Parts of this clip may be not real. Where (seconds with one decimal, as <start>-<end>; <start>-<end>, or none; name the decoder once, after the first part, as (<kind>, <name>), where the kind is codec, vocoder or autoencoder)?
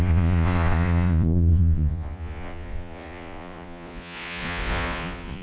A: 0.0-5.4 (vocoder, Vocos)